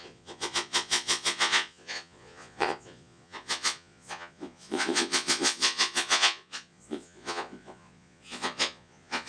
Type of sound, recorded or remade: remade